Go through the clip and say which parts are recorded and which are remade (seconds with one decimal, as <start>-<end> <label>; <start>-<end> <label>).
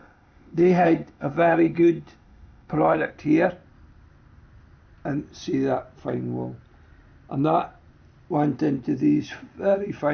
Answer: 0.0-3.1 remade; 3.1-10.1 recorded